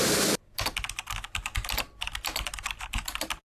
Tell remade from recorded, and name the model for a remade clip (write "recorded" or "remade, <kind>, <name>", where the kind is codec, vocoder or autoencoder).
recorded